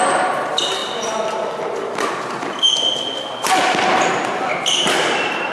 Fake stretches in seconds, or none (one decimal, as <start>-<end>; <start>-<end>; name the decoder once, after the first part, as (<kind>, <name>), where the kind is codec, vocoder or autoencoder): none